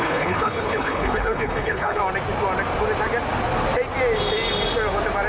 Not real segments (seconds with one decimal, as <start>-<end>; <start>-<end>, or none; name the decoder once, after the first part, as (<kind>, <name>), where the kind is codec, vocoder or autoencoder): 0.0-2.0 (codec, HILCodec)